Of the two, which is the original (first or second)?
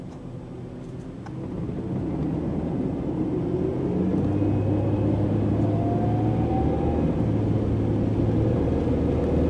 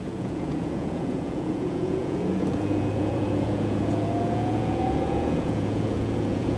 first